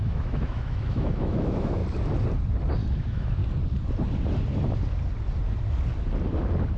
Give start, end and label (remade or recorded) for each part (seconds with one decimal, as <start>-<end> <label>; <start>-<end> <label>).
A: 0.0-1.8 remade; 1.8-2.9 recorded; 2.9-3.4 remade; 3.4-6.8 recorded